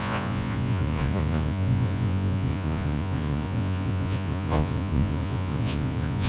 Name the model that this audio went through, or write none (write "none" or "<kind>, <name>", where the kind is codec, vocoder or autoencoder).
vocoder, Vocos